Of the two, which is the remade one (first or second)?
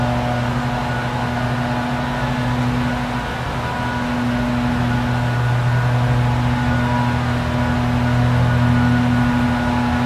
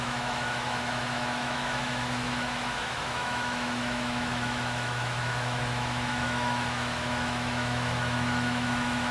second